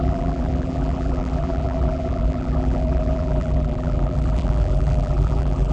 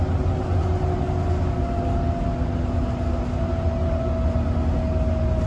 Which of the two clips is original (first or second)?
second